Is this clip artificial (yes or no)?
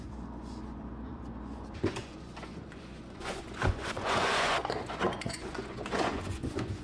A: yes